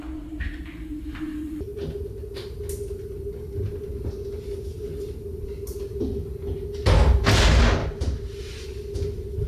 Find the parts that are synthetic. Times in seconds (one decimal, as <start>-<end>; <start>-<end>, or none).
none